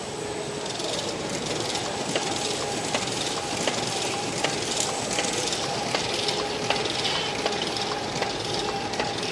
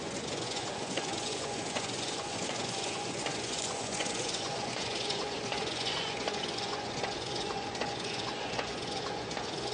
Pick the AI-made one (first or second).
second